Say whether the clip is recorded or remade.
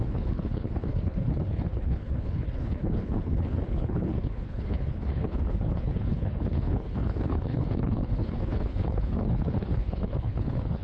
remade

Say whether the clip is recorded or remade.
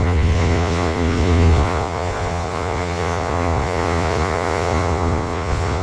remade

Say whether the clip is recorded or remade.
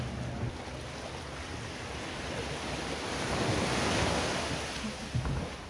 recorded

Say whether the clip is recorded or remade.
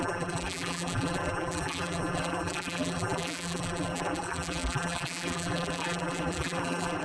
remade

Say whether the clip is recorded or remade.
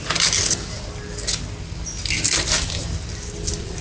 recorded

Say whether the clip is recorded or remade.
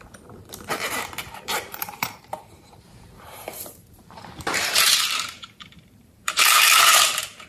remade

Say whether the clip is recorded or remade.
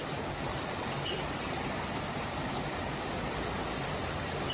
recorded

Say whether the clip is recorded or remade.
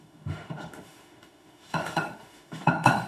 remade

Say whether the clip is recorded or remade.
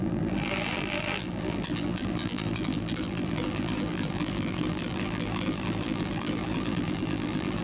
remade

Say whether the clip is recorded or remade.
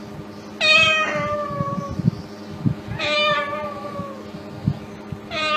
recorded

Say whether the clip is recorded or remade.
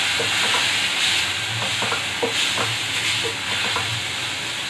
recorded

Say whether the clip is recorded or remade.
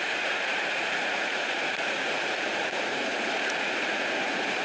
remade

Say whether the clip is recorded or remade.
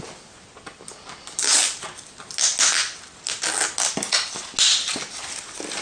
recorded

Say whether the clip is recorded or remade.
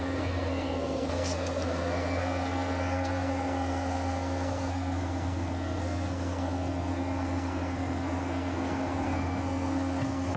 remade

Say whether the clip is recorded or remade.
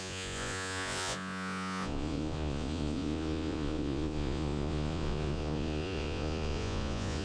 remade